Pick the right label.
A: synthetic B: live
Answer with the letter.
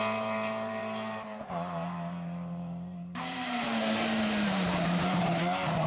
A